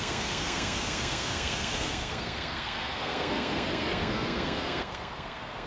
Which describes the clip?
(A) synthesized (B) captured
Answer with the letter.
A